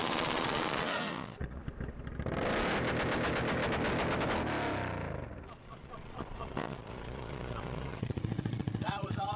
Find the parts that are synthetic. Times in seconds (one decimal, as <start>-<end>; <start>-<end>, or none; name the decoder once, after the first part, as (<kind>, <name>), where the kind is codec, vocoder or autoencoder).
0.0-1.6 (vocoder, Vocos); 5.6-9.4